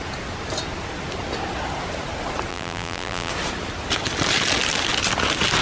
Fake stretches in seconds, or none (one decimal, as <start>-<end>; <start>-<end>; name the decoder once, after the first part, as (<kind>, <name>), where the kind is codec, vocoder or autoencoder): 2.5-3.3 (vocoder, BigVGAN v2)